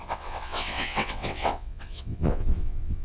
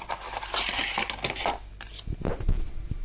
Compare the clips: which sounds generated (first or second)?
first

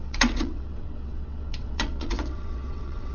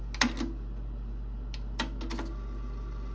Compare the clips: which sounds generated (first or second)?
first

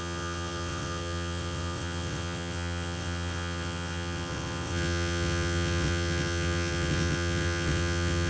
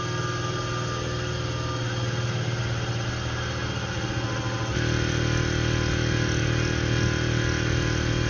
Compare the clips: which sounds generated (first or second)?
first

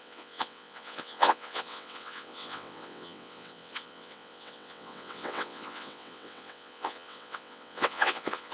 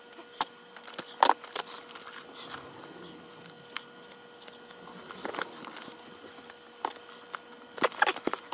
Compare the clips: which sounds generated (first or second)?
first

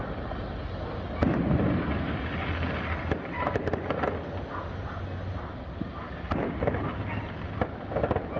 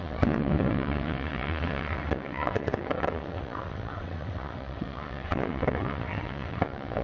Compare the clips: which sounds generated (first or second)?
second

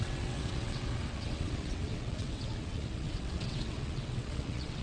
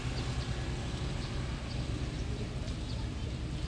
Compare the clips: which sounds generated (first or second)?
first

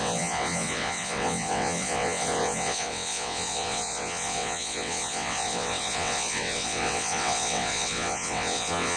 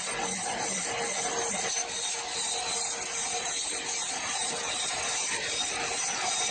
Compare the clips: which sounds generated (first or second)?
first